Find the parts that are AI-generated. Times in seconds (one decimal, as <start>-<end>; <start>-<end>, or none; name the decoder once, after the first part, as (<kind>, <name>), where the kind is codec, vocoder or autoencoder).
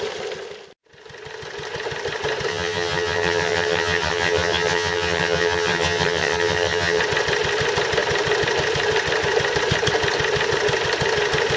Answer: 2.5-7.0 (vocoder, HiFi-GAN)